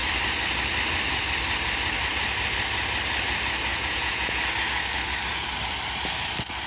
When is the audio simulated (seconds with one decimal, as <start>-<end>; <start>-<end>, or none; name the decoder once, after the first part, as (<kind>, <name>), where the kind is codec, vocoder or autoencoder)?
3.7-4.4 (vocoder, Vocos)